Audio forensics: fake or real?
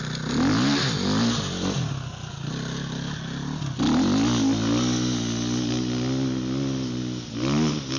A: real